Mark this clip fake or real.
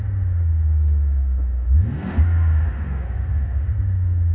fake